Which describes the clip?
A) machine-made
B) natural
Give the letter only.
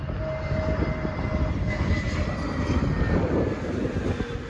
B